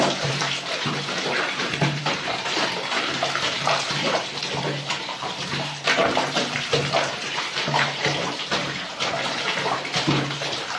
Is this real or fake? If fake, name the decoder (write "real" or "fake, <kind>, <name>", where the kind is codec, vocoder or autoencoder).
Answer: fake, vocoder, BigVGAN v2